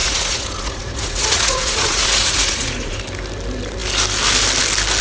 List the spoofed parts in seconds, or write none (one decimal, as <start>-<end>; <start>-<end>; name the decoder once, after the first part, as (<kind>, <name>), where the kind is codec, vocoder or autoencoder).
0.0-3.0 (vocoder, Vocos)